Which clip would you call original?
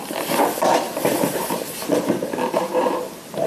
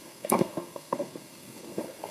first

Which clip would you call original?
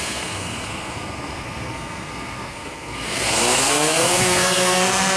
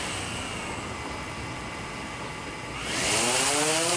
second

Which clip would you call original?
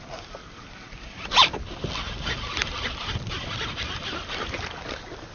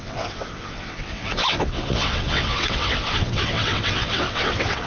first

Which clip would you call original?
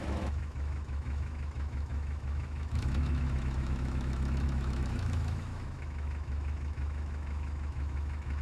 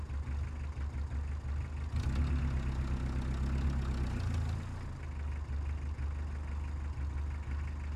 second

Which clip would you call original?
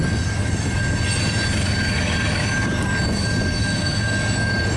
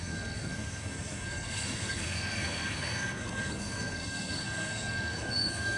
first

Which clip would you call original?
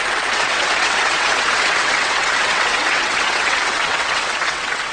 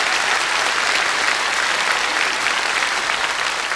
second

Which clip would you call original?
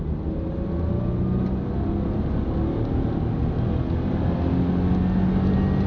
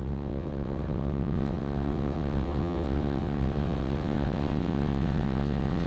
first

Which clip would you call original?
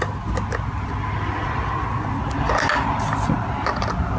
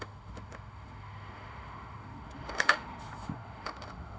first